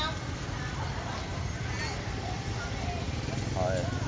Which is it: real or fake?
real